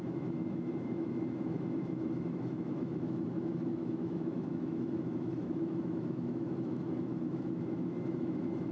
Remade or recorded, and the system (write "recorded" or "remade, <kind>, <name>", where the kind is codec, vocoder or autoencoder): remade, autoencoder, DAC-VAE